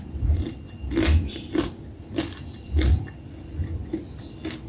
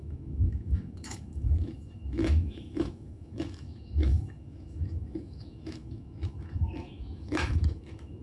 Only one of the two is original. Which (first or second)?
first